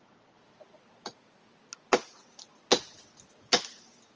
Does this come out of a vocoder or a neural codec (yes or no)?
no